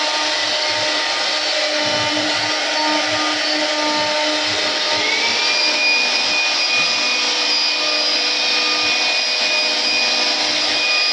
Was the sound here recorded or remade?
recorded